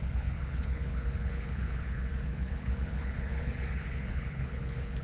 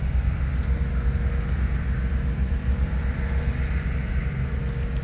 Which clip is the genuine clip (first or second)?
second